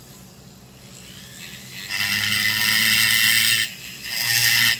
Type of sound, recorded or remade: recorded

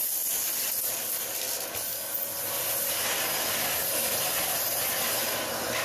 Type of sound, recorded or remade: recorded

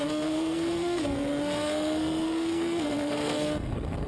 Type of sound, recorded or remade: remade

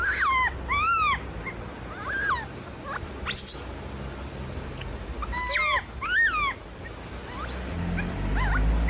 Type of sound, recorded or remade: recorded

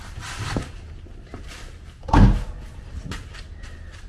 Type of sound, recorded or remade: recorded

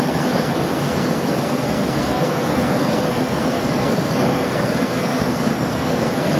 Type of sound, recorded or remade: remade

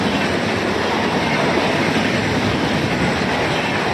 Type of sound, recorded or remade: recorded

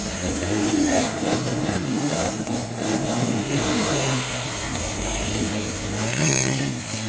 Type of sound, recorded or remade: remade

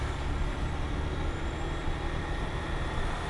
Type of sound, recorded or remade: recorded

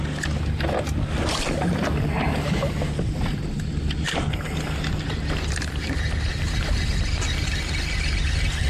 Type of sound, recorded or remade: recorded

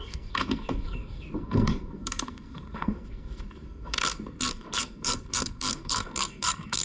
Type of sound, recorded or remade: remade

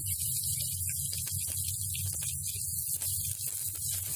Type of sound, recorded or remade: recorded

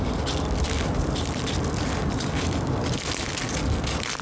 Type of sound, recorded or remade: recorded